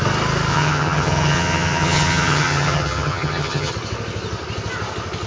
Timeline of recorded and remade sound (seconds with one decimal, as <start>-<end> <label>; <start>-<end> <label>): 0.0-0.5 recorded; 0.5-3.7 remade; 3.7-5.3 recorded